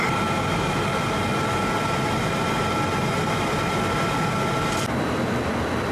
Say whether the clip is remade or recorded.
recorded